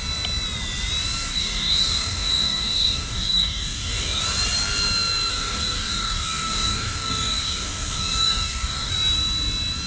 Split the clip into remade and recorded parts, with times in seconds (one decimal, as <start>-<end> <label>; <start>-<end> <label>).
0.0-1.3 recorded; 1.3-4.2 remade; 4.2-5.3 recorded; 5.3-8.9 remade; 8.9-9.9 recorded